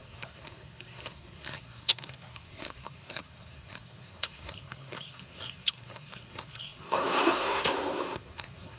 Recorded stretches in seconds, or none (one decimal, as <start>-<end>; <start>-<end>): none